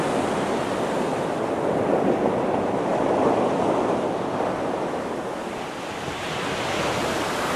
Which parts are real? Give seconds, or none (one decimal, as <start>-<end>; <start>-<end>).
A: 0.0-7.6